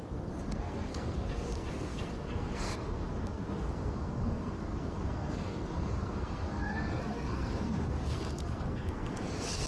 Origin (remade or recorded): remade